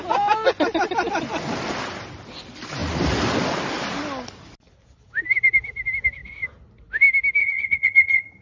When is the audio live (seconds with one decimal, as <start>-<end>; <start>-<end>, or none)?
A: 0.0-7.4